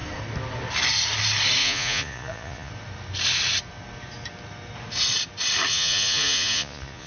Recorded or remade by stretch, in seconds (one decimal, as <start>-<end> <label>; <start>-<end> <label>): 0.0-1.6 recorded; 1.6-2.7 remade; 2.7-5.7 recorded; 5.7-7.1 remade